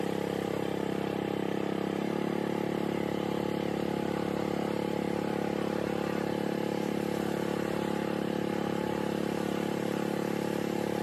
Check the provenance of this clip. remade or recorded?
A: remade